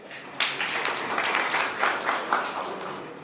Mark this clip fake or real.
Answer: real